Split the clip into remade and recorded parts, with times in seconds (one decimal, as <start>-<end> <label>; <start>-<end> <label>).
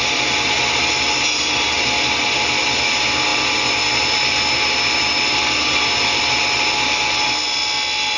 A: 0.0-8.2 recorded